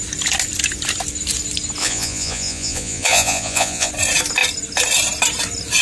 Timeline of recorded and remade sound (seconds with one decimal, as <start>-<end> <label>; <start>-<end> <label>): 0.0-1.8 recorded; 1.8-3.9 remade; 3.9-5.8 recorded